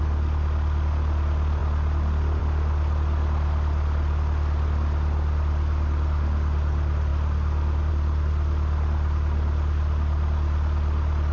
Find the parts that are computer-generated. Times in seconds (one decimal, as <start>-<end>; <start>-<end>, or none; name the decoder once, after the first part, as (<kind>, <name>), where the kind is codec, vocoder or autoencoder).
none